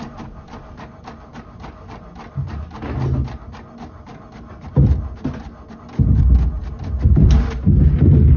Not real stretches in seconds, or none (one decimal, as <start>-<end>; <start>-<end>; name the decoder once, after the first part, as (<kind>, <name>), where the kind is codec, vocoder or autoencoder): none